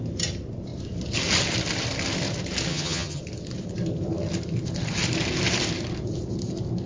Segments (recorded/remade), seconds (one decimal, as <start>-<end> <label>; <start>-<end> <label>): 0.0-2.7 recorded; 2.7-3.2 remade; 3.2-6.9 recorded